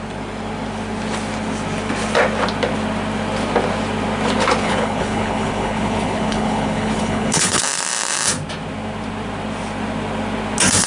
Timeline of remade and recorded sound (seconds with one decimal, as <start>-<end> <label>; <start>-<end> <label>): 0.0-4.6 recorded; 4.6-7.6 remade; 7.6-10.9 recorded